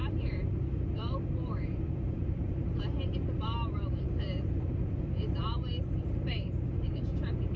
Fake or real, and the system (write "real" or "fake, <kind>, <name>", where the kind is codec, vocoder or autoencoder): fake, vocoder, BigVGAN v2